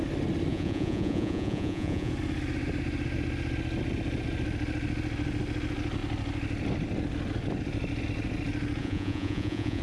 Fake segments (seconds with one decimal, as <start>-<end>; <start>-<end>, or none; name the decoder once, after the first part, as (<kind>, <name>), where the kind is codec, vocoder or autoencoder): 0.5-2.1 (vocoder, Vocos); 8.8-9.8

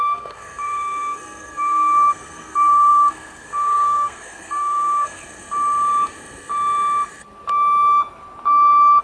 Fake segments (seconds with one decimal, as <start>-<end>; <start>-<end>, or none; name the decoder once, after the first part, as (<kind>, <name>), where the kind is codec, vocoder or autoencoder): 0.0-5.2 (codec, SNAC)

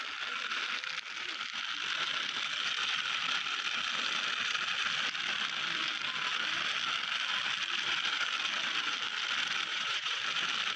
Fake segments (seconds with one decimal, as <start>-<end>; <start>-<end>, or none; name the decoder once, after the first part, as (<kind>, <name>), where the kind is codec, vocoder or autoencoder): 9.7-10.2 (vocoder, Vocos)

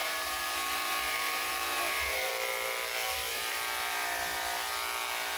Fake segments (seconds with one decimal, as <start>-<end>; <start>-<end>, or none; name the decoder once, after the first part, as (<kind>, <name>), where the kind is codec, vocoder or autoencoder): 0.0-2.3 (vocoder, BigVGAN v2)

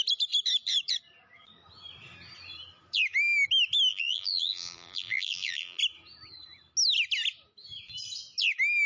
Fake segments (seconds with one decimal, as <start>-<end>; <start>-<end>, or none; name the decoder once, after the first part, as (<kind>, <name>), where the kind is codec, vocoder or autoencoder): 3.9-5.8 (vocoder, BigVGAN v2)

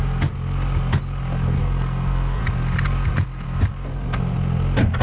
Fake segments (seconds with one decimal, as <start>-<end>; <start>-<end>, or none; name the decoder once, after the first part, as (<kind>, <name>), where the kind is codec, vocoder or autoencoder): 1.6-2.4 (codec, SNAC)

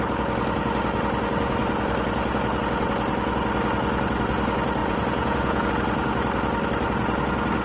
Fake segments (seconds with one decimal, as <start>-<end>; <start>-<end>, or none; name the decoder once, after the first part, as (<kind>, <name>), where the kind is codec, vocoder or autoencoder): 4.8-5.7 (vocoder, Vocos)